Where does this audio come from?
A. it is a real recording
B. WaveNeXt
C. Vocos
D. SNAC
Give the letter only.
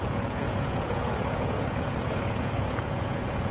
C